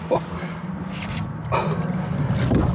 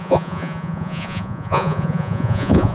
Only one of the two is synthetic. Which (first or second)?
second